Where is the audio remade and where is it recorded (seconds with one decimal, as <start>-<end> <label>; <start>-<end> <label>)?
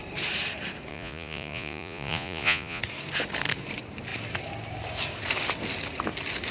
0.0-0.9 recorded; 0.9-2.8 remade; 2.8-6.5 recorded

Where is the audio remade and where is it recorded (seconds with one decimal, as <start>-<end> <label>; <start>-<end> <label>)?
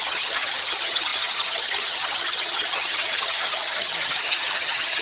0.0-5.0 remade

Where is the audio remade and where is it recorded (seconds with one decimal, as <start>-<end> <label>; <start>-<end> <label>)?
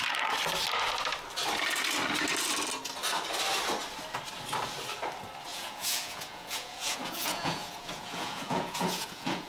0.0-5.5 recorded; 5.5-9.5 remade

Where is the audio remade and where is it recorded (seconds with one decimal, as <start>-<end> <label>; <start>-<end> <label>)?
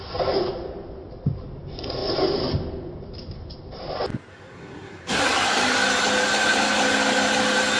0.0-4.3 recorded; 4.3-5.2 remade; 5.2-7.8 recorded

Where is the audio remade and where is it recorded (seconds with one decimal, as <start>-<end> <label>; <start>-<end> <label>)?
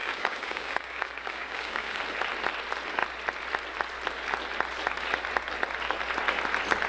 0.0-2.0 remade; 2.0-6.9 recorded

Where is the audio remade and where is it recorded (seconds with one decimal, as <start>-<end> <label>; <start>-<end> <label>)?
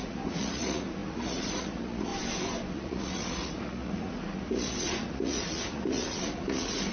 0.0-2.1 remade; 2.1-2.7 recorded; 2.7-6.9 remade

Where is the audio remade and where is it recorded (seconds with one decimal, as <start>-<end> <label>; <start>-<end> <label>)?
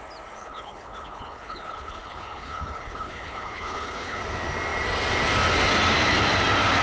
0.0-0.4 recorded; 0.4-4.2 remade; 4.2-6.8 recorded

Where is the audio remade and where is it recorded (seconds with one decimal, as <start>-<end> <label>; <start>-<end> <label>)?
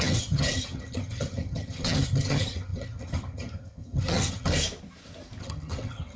0.0-4.5 remade; 4.5-5.4 recorded; 5.4-6.2 remade